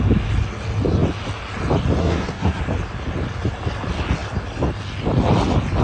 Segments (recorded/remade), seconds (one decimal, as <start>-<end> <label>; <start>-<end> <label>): 0.0-2.0 recorded; 2.0-2.6 remade; 2.6-5.8 recorded